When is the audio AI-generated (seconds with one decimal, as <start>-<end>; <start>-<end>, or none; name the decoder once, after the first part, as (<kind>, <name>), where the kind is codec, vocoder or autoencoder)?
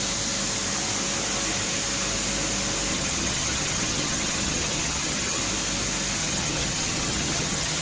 2.9-5.4 (vocoder, HiFi-GAN); 6.2-7.8